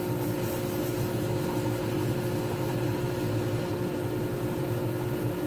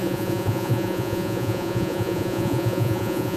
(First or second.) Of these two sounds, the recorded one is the first